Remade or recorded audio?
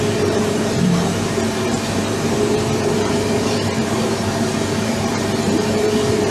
remade